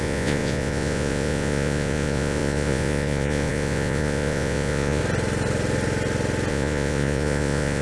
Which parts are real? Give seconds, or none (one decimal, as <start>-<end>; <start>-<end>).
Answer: 5.0-6.5